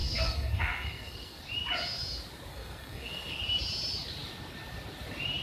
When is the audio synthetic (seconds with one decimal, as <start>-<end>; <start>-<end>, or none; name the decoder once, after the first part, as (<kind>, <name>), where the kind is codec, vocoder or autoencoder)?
0.0-1.4 (codec, SNAC); 2.5-3.4